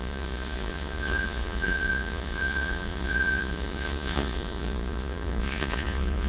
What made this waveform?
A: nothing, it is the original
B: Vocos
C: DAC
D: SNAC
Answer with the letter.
B